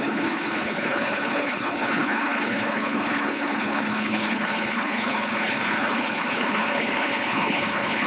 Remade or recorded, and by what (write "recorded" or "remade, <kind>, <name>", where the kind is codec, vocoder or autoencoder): remade, codec, HILCodec